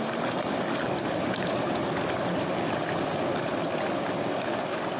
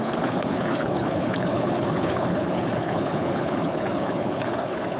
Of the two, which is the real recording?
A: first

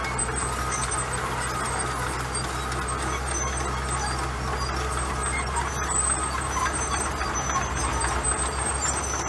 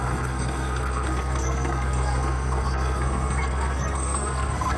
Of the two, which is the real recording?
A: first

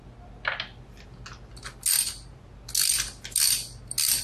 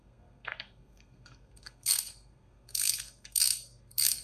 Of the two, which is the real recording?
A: first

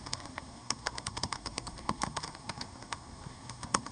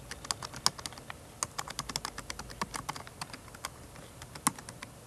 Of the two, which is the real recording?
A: second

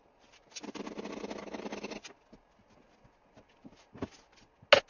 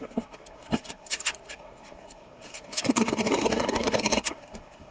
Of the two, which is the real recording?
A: first